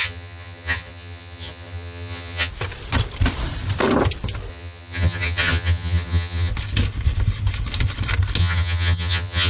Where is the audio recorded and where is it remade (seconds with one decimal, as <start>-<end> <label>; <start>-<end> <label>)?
0.0-2.5 remade; 2.5-4.5 recorded; 4.5-6.5 remade; 6.5-8.4 recorded; 8.4-9.5 remade